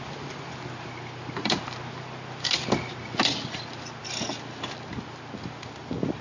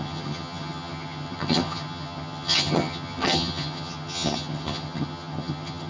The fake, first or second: second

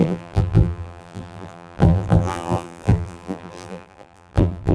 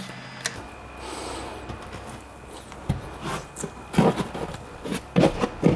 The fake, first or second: first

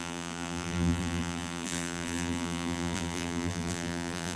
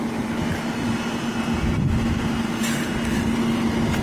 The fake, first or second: first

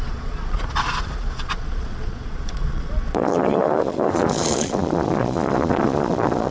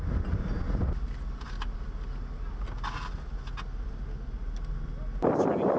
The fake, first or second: first